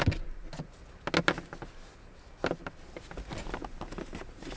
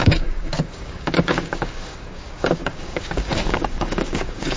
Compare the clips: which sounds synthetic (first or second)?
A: second